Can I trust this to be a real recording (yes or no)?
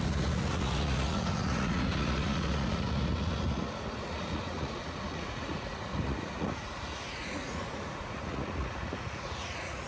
no